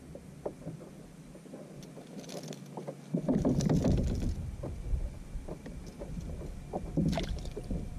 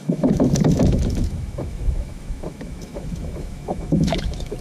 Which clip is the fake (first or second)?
second